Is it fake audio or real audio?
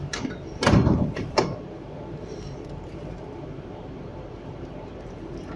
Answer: fake